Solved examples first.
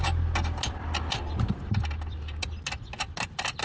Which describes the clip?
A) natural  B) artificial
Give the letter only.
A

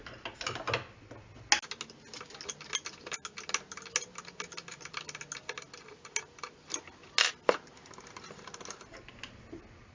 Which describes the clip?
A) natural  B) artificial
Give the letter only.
A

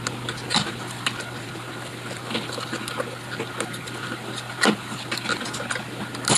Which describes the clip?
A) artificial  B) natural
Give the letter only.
B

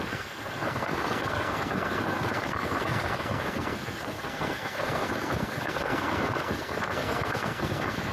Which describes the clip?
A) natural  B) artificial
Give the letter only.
B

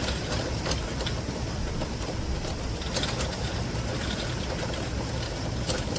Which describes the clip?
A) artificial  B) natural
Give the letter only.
B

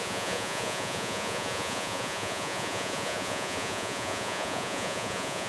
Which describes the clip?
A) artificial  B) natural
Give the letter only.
A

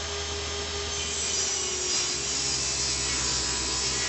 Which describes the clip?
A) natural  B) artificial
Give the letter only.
A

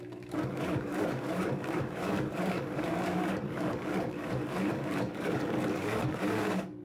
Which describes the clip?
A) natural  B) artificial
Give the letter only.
B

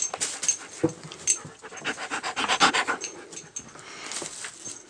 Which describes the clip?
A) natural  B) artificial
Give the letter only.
A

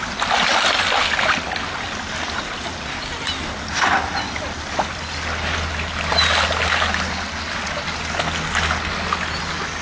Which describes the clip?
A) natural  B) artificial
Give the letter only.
A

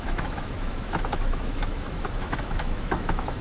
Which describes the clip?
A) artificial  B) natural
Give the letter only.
A